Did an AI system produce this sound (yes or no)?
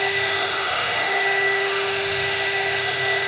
yes